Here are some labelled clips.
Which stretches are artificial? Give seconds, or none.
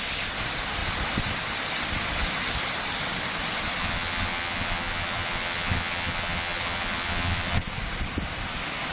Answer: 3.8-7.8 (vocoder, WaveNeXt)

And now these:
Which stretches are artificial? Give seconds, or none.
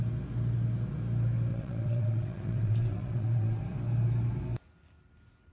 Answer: 1.5-3.6 (vocoder, WaveNeXt)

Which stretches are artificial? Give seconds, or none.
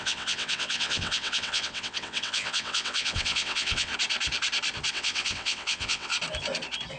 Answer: 0.0-3.9 (vocoder, WaveNeXt); 4.9-6.1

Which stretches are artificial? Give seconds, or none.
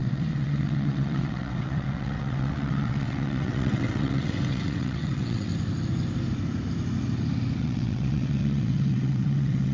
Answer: 0.0-5.5 (vocoder, WaveNeXt); 7.6-9.7